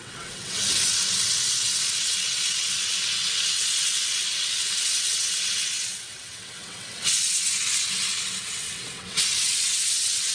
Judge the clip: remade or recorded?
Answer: remade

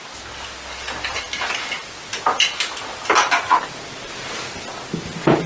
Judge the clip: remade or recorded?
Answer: recorded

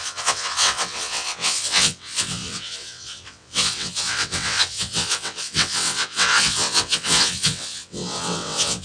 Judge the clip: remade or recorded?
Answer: remade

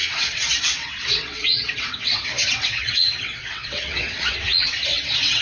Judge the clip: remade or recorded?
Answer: remade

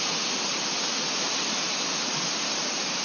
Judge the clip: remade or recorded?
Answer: recorded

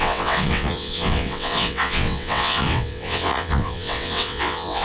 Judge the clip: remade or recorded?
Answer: remade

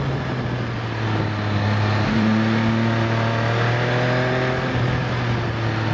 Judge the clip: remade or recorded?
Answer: recorded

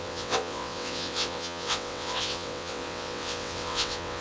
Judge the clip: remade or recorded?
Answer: remade